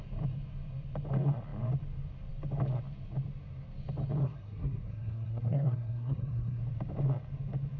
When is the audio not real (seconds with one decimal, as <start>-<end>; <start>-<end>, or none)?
4.2-6.6